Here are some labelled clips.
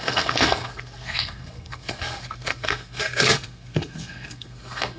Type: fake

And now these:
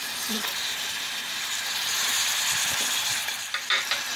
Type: fake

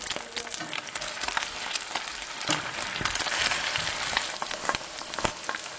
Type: real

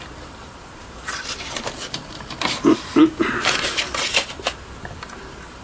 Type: fake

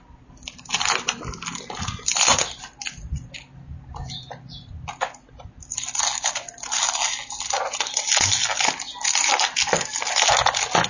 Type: real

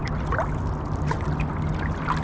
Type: real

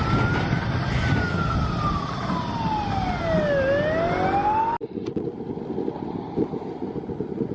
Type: real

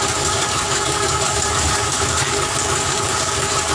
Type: fake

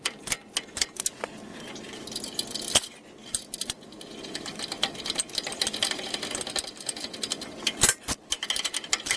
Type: real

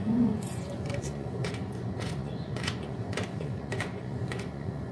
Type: fake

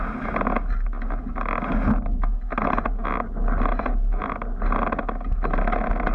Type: real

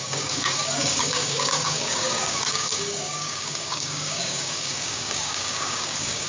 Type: fake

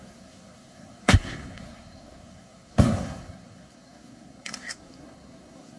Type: fake